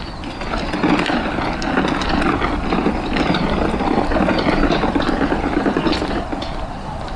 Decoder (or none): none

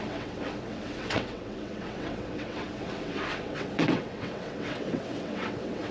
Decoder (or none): vocoder, WaveNeXt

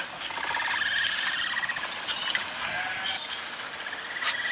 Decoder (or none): none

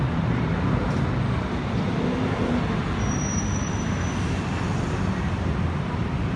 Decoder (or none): none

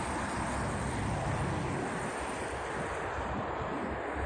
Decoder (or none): none